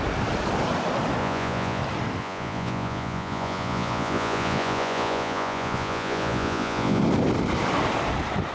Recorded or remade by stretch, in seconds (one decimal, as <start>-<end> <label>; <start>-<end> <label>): 0.0-1.2 recorded; 1.2-1.8 remade; 1.8-2.2 recorded; 2.2-7.0 remade; 7.0-8.5 recorded

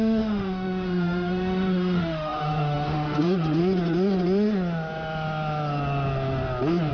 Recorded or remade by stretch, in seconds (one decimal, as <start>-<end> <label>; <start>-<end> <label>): 0.0-3.6 remade; 3.6-6.9 recorded